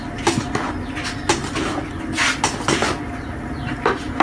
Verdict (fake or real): real